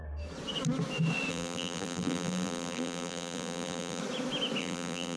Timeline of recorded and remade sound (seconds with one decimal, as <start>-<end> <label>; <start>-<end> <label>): 0.0-1.3 recorded; 1.3-4.0 remade; 4.0-4.6 recorded; 4.6-5.2 remade